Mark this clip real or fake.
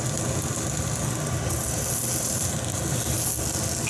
real